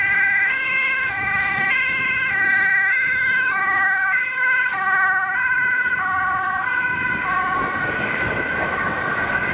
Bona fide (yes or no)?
no